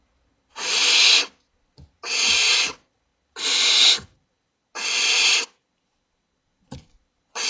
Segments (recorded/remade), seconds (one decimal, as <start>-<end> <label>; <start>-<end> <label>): 0.0-7.5 recorded